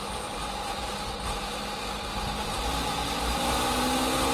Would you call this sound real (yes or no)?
yes